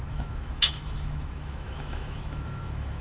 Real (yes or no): no